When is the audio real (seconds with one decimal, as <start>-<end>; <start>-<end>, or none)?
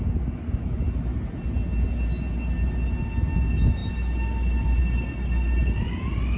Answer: 0.0-6.4